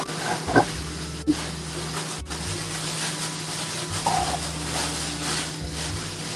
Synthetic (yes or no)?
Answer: no